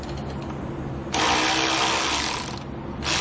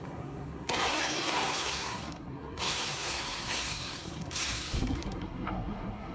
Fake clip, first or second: second